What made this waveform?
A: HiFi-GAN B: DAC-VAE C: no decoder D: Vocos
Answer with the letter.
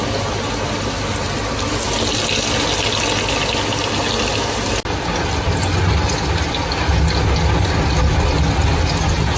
C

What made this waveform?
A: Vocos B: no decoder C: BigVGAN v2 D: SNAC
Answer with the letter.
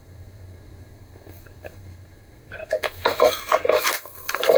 D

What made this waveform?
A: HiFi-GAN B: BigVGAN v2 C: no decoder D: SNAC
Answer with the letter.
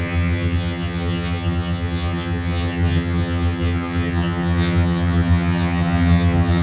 A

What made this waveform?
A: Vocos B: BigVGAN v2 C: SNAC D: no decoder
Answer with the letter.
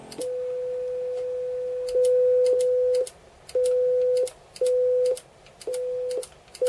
D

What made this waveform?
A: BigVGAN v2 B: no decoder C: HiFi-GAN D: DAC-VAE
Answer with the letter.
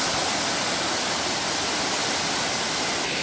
B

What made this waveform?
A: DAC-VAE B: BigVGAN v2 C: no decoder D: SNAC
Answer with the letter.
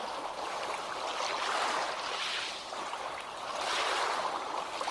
C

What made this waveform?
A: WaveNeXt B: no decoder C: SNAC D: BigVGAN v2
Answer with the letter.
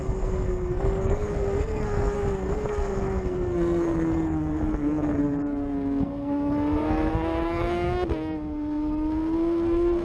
C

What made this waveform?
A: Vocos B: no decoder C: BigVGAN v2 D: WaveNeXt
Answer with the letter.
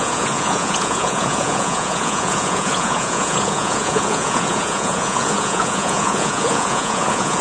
A